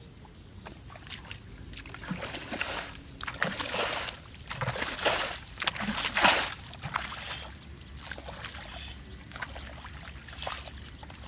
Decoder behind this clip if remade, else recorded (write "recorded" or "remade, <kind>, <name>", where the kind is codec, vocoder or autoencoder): recorded